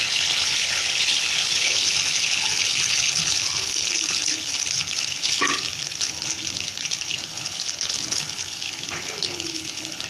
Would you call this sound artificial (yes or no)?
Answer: yes